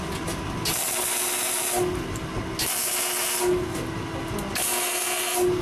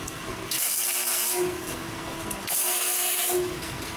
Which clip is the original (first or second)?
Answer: first